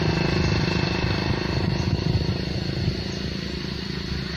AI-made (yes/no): no